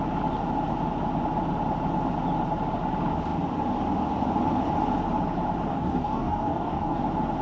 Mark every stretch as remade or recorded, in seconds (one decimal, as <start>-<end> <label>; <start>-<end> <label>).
0.0-5.7 recorded; 5.7-7.0 remade; 7.0-7.4 recorded